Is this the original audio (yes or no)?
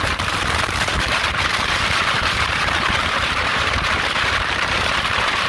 no